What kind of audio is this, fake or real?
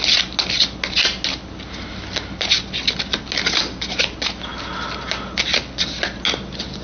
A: real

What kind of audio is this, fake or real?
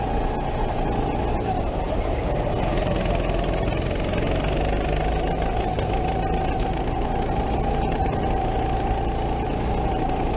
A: real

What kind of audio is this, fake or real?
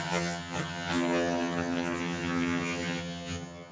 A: fake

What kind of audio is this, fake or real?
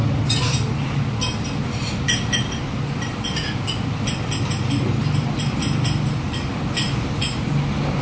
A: real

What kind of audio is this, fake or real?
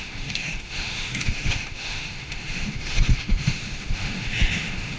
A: fake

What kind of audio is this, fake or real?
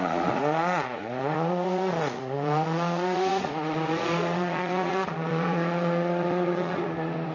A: fake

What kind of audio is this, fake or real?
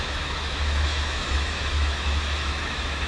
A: fake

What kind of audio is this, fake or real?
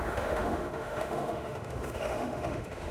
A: fake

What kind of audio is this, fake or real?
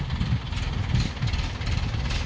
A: real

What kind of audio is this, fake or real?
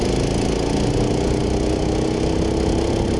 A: real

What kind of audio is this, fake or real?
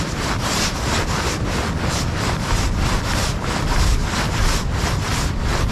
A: real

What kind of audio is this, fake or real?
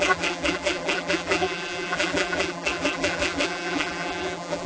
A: fake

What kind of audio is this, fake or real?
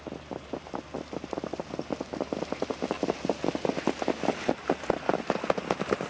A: real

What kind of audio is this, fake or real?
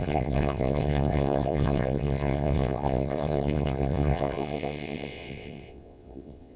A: fake